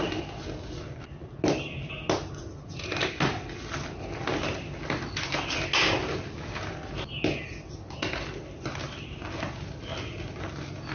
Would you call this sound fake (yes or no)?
no